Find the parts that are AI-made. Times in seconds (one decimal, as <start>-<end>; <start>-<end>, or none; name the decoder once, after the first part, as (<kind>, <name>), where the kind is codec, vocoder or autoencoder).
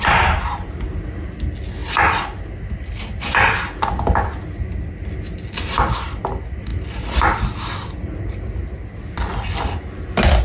none